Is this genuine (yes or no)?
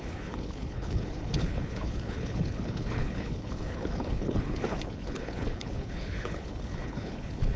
no